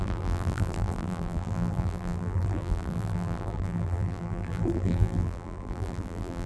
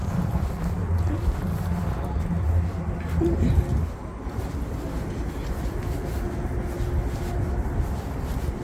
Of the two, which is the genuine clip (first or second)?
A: second